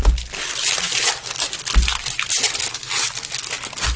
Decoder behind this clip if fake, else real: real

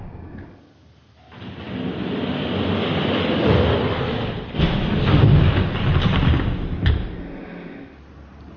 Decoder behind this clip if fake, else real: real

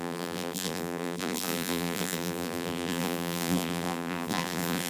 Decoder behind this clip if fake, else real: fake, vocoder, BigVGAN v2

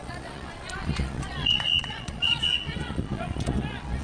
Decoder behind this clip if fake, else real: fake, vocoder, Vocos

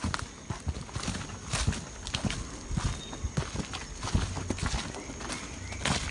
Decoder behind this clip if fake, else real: real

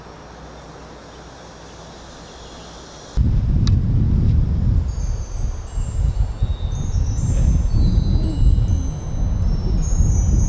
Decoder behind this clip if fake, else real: real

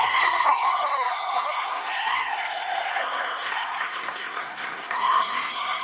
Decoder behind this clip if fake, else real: fake, codec, SNAC